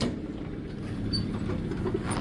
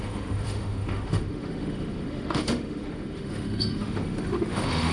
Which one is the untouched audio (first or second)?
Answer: first